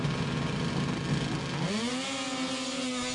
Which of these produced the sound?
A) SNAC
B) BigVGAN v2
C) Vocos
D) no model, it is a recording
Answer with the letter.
D